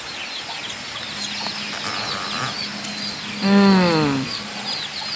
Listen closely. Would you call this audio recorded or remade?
recorded